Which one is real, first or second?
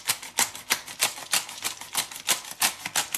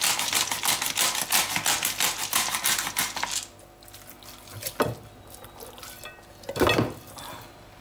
second